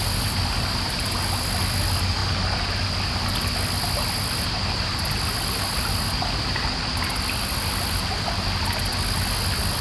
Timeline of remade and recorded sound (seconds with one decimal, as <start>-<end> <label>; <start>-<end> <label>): 0.0-9.8 recorded